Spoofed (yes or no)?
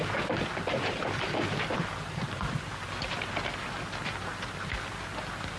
no